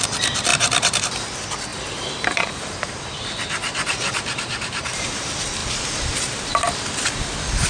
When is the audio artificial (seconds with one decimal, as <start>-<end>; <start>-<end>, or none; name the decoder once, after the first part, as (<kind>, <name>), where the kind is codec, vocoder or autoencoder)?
0.5-1.0 (vocoder, BigVGAN v2); 1.7-5.0; 5.6-6.4